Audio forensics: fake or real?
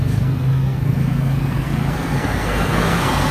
fake